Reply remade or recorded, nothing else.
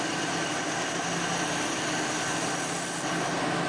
recorded